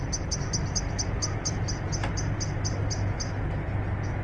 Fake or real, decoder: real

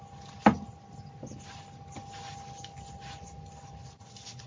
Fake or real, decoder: real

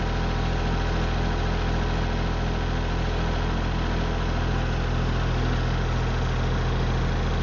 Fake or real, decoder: real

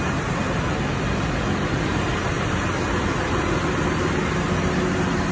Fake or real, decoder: real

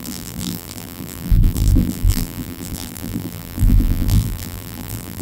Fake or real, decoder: fake, vocoder, BigVGAN v2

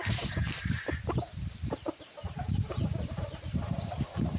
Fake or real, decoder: fake, vocoder, BigVGAN v2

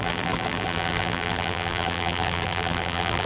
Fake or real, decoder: fake, vocoder, BigVGAN v2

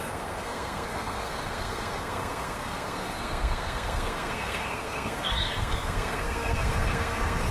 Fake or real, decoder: fake, codec, SNAC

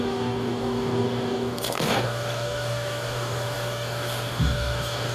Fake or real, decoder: fake, codec, DAC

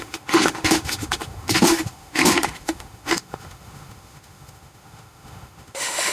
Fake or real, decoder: fake, autoencoder, DAC-VAE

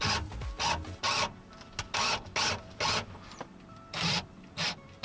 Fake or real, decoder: real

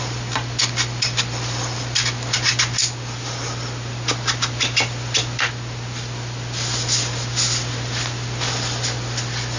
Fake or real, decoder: real